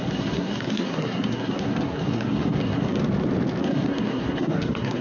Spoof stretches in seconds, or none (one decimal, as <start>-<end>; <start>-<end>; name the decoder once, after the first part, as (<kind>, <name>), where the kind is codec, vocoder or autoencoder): 0.0-3.0 (codec, SNAC); 3.6-5.0